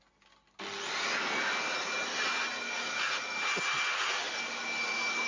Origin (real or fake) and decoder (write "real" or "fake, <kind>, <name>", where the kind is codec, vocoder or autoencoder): real